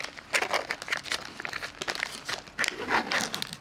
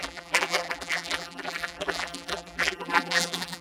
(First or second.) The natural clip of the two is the first